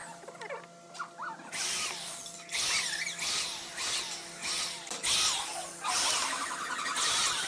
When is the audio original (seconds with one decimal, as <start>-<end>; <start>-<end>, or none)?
0.0-7.5